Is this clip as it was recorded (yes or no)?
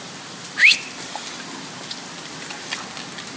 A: yes